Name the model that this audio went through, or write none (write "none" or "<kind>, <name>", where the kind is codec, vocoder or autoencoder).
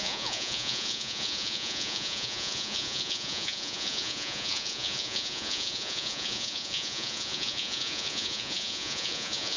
vocoder, Vocos